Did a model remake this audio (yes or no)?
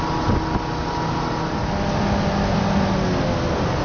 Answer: no